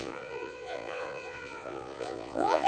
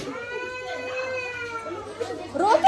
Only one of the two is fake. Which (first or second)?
first